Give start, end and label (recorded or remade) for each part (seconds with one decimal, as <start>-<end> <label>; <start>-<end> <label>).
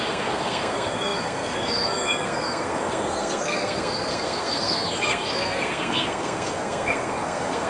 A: 0.0-7.7 remade